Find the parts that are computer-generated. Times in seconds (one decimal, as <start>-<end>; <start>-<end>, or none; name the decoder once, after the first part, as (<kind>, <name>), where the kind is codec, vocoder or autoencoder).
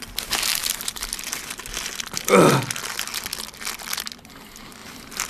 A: none